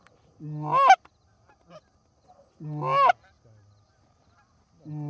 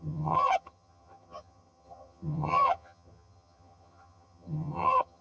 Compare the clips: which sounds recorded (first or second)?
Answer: first